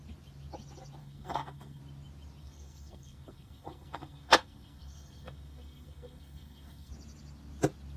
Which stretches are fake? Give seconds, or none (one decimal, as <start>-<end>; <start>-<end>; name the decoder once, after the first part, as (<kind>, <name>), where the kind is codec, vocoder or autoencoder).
1.0-1.8 (codec, SNAC); 2.4-6.9